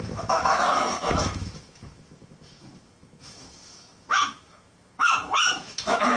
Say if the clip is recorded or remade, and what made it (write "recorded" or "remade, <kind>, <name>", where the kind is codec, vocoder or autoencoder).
remade, autoencoder, DAC-VAE